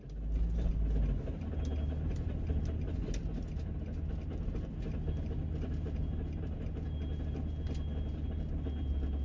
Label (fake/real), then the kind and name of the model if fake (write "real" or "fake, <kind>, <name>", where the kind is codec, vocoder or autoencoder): real